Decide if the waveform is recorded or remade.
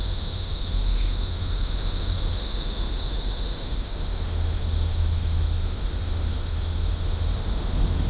remade